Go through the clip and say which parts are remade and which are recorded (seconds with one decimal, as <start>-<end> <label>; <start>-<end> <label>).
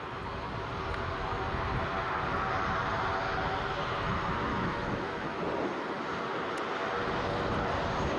0.0-4.5 recorded; 4.5-5.4 remade; 5.4-8.2 recorded